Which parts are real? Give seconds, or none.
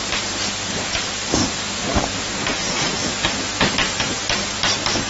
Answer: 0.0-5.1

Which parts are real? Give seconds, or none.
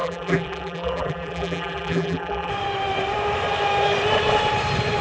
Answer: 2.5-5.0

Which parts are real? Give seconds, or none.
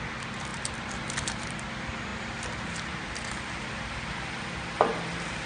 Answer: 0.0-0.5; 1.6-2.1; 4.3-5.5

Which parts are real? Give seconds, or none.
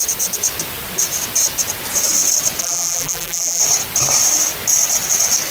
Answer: 0.0-2.6; 3.6-5.5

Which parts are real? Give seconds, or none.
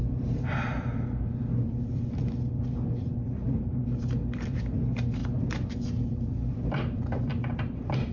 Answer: 5.2-6.0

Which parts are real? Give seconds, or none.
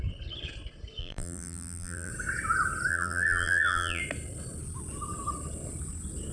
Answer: 0.0-1.0; 2.1-2.9; 4.0-6.3